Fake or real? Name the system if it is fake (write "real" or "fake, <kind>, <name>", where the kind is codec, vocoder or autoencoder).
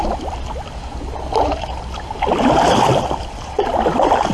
fake, vocoder, BigVGAN v2